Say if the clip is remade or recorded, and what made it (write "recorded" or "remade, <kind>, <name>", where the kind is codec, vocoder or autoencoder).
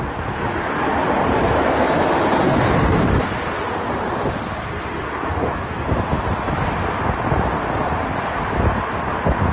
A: recorded